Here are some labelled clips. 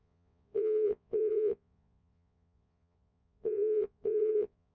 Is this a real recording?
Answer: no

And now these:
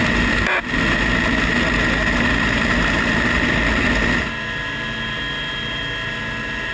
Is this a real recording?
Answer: yes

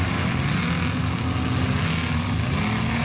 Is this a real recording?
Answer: yes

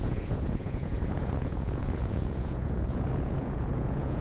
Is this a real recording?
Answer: no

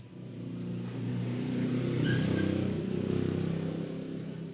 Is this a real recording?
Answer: yes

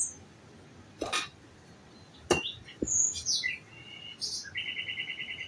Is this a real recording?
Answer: yes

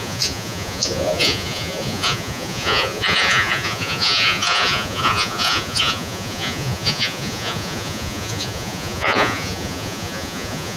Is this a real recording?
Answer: no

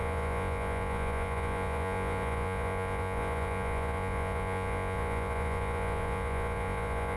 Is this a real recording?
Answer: no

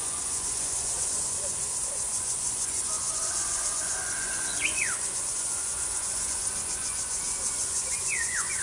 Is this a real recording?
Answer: no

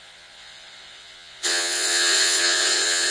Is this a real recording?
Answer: no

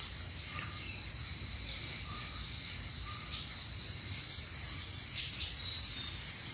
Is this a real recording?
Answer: yes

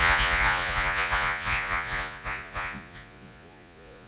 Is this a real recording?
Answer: no